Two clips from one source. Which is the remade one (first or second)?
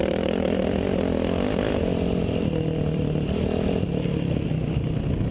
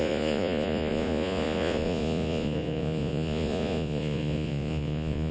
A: second